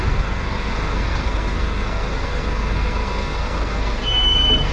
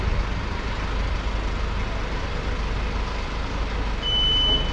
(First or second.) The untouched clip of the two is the second